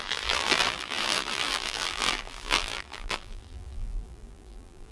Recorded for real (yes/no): no